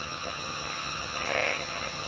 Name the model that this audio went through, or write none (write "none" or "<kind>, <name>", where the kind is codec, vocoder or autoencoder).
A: vocoder, HiFi-GAN